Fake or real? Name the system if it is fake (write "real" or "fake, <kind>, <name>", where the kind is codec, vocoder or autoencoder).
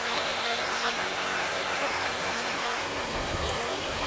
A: fake, codec, SNAC